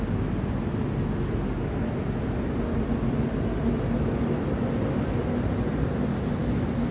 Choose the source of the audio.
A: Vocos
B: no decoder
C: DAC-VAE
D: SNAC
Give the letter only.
B